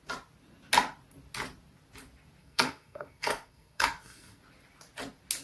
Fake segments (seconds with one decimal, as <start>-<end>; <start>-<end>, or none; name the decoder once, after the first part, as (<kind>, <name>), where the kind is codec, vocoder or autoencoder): 2.4-4.4 (codec, SNAC)